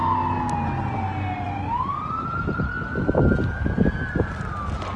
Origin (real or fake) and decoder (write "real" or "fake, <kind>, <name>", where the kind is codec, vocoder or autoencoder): real